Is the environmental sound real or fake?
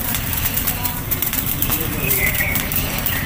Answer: fake